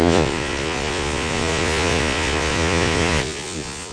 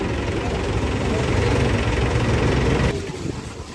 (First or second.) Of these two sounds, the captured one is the second